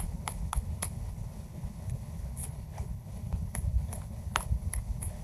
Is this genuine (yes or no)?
no